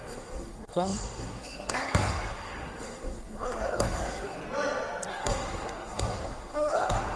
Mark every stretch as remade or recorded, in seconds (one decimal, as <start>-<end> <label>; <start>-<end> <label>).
0.0-4.4 remade; 4.4-5.1 recorded; 5.1-7.2 remade